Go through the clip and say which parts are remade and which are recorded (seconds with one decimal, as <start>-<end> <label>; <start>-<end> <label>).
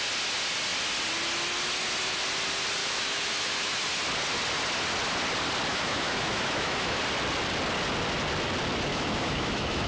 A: 0.0-2.8 recorded; 2.8-3.8 remade; 3.8-5.7 recorded; 5.7-7.0 remade; 7.0-8.9 recorded; 8.9-9.9 remade